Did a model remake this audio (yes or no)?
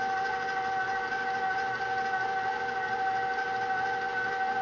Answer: no